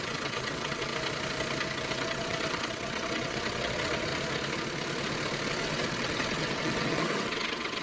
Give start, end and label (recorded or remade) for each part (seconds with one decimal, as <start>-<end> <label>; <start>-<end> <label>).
0.0-0.9 remade; 0.9-1.9 recorded; 1.9-4.1 remade; 4.1-5.5 recorded; 5.5-7.8 remade